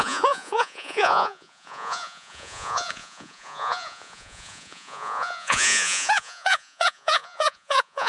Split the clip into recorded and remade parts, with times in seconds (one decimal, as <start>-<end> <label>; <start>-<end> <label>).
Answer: 0.0-8.1 remade